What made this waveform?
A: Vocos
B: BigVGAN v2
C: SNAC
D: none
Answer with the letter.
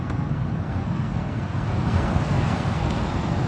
C